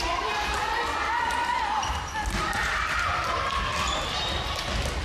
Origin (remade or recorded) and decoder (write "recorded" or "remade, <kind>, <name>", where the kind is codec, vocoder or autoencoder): recorded